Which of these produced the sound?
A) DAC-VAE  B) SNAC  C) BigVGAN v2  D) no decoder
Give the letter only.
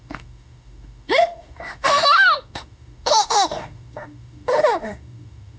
A